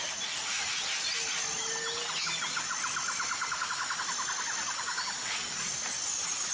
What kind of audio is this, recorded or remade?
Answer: recorded